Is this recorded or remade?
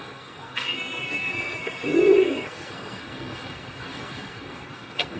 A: remade